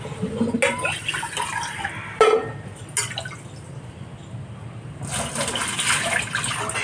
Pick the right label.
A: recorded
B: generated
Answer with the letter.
A